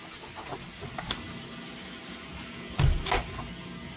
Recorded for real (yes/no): yes